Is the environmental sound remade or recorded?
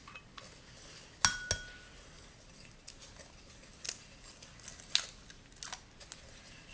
recorded